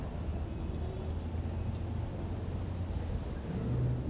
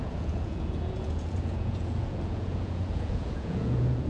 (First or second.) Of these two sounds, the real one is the first